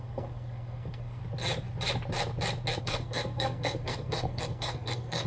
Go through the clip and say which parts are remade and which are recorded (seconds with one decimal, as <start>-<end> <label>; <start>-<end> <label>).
0.0-1.2 remade; 1.2-2.8 recorded; 2.8-5.3 remade